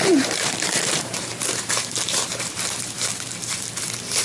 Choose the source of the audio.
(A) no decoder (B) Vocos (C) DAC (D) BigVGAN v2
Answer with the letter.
D